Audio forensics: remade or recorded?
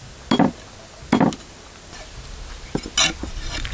recorded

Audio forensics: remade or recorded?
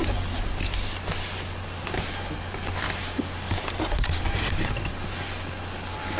recorded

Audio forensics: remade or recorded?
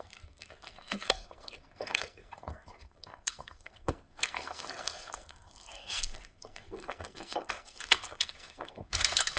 remade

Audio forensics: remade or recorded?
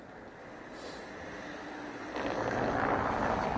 recorded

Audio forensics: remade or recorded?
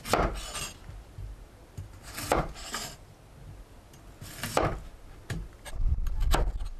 recorded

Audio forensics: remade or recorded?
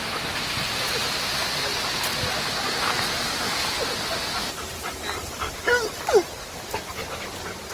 recorded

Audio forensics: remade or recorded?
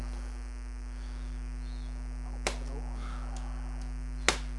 recorded